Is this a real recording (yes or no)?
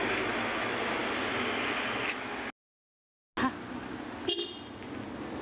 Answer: yes